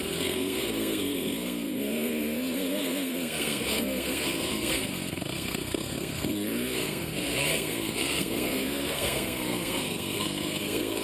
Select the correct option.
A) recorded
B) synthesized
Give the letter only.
B